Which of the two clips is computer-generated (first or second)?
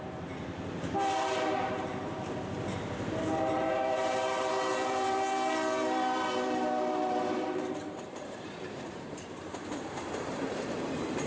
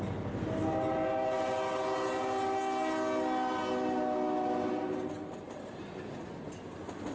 first